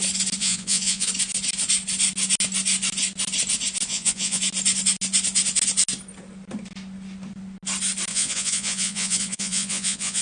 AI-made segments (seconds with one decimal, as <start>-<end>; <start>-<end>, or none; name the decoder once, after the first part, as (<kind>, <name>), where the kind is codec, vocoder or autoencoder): 0.4-1.1 (vocoder, Vocos); 3.9-4.4; 8.1-10.2